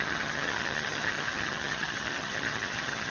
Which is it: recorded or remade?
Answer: remade